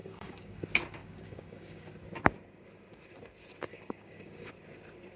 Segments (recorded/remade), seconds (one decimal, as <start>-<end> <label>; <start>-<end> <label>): 0.0-0.6 remade; 0.6-1.0 recorded; 1.0-1.9 remade; 1.9-3.7 recorded; 3.7-4.5 remade; 4.5-5.2 recorded